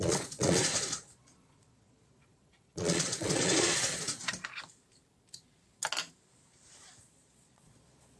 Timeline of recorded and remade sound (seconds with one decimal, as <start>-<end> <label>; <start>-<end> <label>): 0.0-4.2 remade; 4.2-7.0 recorded; 7.0-8.2 remade